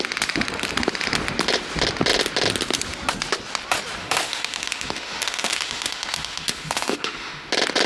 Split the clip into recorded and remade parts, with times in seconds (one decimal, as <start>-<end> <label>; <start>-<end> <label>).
0.0-4.0 recorded; 4.0-7.5 remade; 7.5-7.9 recorded